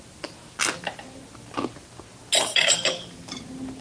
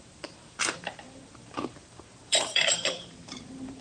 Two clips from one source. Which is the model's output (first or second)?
second